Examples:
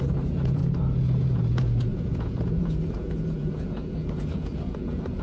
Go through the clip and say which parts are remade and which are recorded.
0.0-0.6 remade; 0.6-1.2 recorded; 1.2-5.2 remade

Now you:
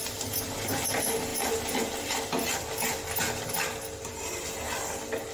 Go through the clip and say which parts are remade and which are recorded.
0.0-5.3 recorded

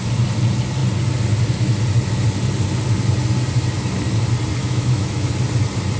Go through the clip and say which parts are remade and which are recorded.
0.0-4.6 recorded; 4.6-5.3 remade; 5.3-6.0 recorded

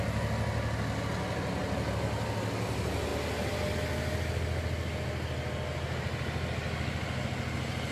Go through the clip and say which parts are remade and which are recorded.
0.0-7.9 recorded

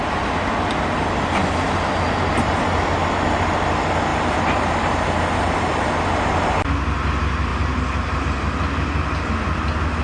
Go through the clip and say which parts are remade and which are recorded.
0.0-4.1 recorded; 4.1-5.9 remade; 5.9-7.5 recorded; 7.5-8.2 remade; 8.2-10.0 recorded

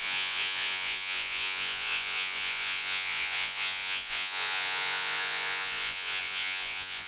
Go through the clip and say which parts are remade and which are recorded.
0.0-7.1 remade

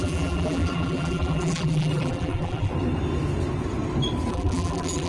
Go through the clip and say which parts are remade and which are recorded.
0.0-2.7 remade; 2.7-4.3 recorded; 4.3-5.1 remade